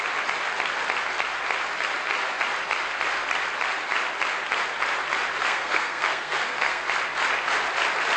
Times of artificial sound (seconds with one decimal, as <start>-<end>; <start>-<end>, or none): 5.4-6.8